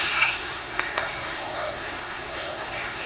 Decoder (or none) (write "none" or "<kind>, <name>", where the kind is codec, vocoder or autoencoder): codec, SNAC